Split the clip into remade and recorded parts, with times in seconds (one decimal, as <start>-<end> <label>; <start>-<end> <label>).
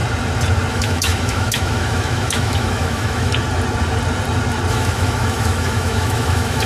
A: 0.0-0.7 recorded; 0.7-3.3 remade; 3.3-4.7 recorded; 4.7-6.7 remade